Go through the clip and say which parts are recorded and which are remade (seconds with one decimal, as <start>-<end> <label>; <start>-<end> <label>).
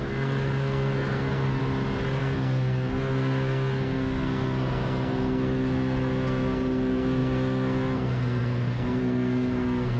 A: 0.0-1.6 remade; 1.6-2.2 recorded; 2.2-10.0 remade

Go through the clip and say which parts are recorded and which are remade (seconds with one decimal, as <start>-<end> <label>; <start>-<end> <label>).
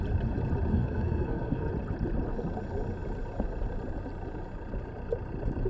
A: 0.0-0.7 recorded; 0.7-1.7 remade; 1.7-5.7 recorded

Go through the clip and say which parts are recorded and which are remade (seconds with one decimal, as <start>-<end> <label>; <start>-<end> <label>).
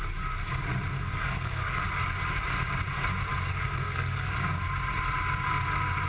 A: 0.0-1.0 recorded; 1.0-1.8 remade; 1.8-3.5 recorded; 3.5-4.3 remade; 4.3-6.1 recorded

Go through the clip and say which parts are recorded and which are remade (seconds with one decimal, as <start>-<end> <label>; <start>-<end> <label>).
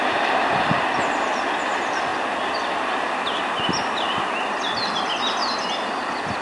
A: 0.0-6.4 recorded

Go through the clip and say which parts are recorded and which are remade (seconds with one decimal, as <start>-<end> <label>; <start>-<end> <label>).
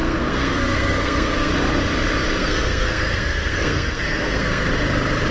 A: 0.0-1.5 remade; 1.5-2.4 recorded; 2.4-4.7 remade; 4.7-5.3 recorded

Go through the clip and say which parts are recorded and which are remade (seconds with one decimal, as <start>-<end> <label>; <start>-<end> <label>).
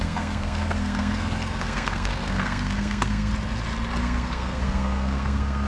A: 0.0-3.3 remade; 3.3-4.0 recorded; 4.0-5.7 remade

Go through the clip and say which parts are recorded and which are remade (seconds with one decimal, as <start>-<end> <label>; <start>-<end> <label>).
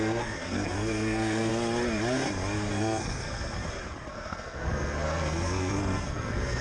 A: 0.0-1.5 remade; 1.5-2.7 recorded; 2.7-3.6 remade; 3.6-4.1 recorded; 4.1-6.6 remade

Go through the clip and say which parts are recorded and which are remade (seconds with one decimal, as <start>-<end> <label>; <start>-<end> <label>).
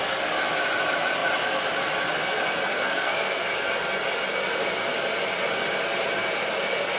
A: 0.0-2.7 recorded; 2.7-3.4 remade; 3.4-7.0 recorded